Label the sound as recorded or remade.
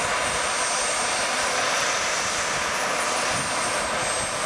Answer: recorded